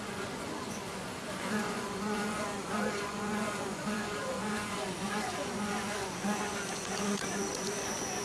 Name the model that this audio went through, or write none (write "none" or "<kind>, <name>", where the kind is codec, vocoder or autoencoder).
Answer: vocoder, Vocos